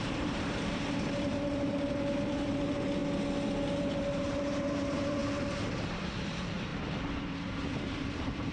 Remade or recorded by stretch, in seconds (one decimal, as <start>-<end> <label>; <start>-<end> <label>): 0.0-3.0 remade; 3.0-3.8 recorded; 3.8-5.2 remade; 5.2-5.9 recorded; 5.9-6.7 remade; 6.7-7.2 recorded; 7.2-8.5 remade